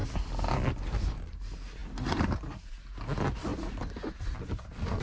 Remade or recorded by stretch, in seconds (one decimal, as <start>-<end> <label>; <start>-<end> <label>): 0.0-0.7 remade; 0.7-3.5 recorded; 3.5-4.3 remade; 4.3-5.0 recorded